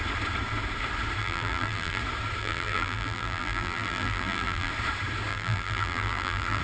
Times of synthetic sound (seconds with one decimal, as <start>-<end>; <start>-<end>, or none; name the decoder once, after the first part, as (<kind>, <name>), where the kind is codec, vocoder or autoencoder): 1.2-2.0 (vocoder, BigVGAN v2); 2.4-4.7; 5.3-6.6